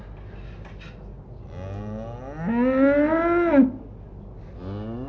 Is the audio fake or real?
real